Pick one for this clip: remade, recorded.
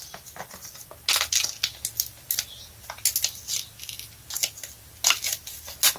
recorded